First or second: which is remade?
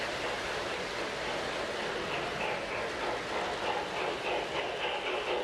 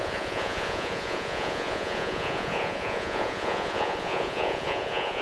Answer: second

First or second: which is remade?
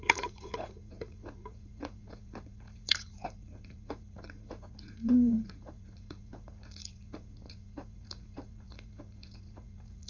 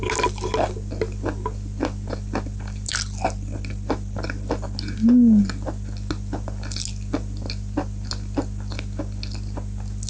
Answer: first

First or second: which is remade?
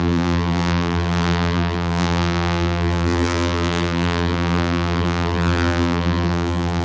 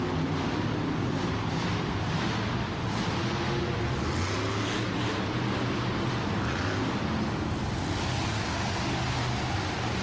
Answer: first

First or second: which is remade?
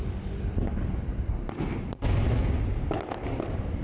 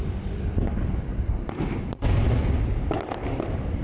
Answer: second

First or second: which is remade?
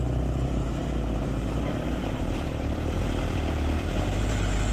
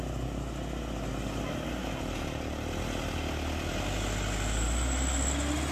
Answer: first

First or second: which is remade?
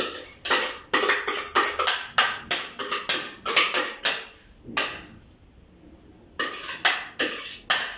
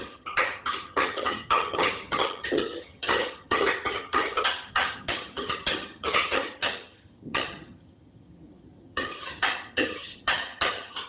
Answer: second